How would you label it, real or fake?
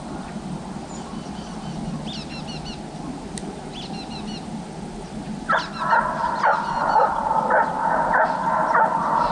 real